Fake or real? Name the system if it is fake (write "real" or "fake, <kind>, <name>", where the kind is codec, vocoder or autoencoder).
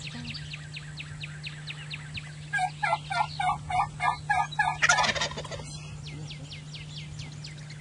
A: real